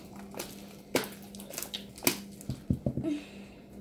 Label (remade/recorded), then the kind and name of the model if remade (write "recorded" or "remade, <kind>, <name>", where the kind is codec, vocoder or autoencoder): recorded